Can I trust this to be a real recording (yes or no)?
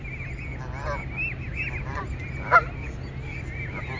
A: yes